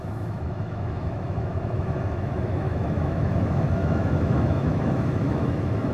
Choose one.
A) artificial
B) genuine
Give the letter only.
A